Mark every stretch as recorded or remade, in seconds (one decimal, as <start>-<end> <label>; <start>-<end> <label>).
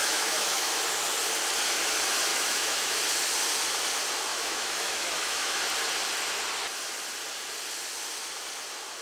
0.0-0.7 remade; 0.7-2.3 recorded; 2.3-3.0 remade; 3.0-4.3 recorded; 4.3-5.6 remade; 5.6-9.0 recorded